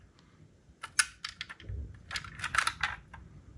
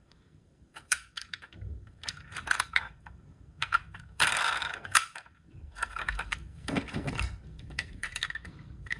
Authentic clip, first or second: first